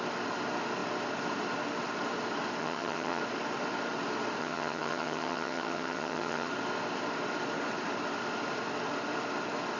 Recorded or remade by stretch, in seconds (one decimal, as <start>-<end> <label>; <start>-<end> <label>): 0.0-2.6 recorded; 2.6-3.2 remade; 3.2-4.4 recorded; 4.4-6.5 remade; 6.5-9.8 recorded